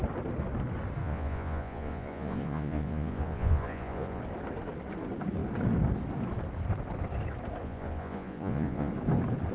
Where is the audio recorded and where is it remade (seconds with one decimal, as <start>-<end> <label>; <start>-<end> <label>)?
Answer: 0.0-1.0 recorded; 1.0-4.2 remade; 4.2-7.6 recorded; 7.6-8.9 remade; 8.9-9.5 recorded